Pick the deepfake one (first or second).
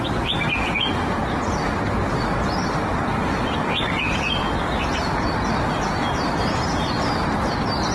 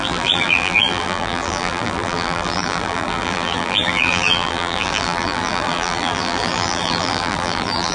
second